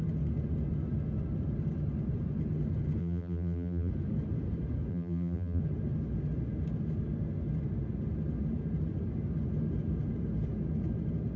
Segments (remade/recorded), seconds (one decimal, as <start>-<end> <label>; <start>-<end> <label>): 0.0-3.0 recorded; 3.0-3.9 remade; 3.9-4.9 recorded; 4.9-5.6 remade; 5.6-11.4 recorded